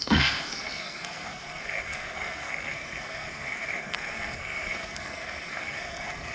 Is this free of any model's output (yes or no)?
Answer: no